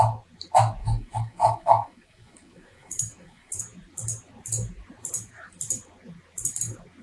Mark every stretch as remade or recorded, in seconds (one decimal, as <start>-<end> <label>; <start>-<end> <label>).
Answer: 0.0-0.8 recorded; 0.8-3.6 remade; 3.6-7.0 recorded